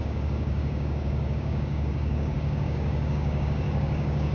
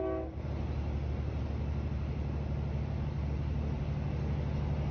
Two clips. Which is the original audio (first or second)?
second